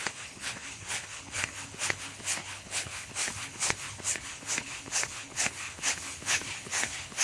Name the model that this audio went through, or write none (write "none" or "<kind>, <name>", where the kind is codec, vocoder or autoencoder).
codec, HILCodec